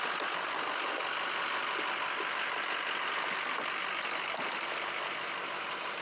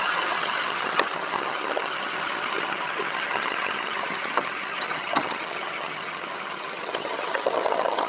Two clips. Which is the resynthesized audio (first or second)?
second